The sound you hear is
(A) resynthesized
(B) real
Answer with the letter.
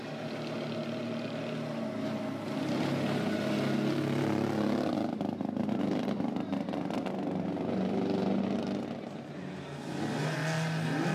B